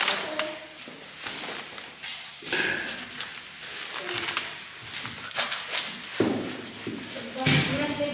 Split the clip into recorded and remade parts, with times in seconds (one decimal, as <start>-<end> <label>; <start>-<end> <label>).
0.0-8.1 recorded